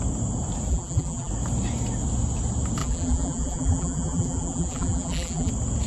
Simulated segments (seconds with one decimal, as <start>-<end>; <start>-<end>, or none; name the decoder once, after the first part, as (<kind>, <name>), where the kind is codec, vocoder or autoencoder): 0.7-1.3 (vocoder, BigVGAN v2); 2.8-5.5